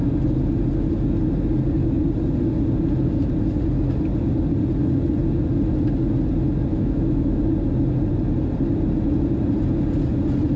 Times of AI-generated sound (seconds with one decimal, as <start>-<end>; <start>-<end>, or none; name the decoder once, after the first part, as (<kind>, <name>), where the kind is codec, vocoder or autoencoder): 6.7-7.4 (autoencoder, DAC-VAE)